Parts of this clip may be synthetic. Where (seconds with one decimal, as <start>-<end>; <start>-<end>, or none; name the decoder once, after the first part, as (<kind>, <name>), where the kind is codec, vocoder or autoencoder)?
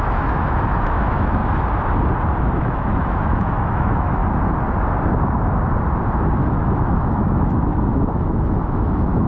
0.0-1.4 (autoencoder, DAC-VAE); 2.6-4.2; 6.5-9.3